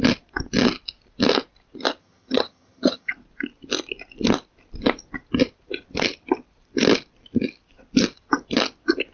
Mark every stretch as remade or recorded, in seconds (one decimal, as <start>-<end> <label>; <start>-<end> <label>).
0.0-2.0 recorded; 2.0-3.1 remade; 3.1-9.1 recorded